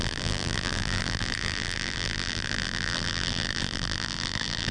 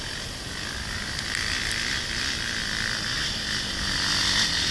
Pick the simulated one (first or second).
first